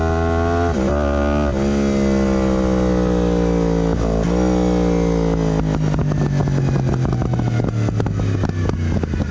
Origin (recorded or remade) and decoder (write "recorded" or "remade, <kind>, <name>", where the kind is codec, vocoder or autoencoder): recorded